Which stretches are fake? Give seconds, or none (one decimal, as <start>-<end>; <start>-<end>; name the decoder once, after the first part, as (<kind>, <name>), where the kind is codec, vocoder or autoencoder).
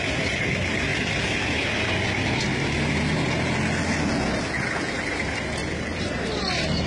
0.0-0.9 (vocoder, BigVGAN v2); 4.9-6.9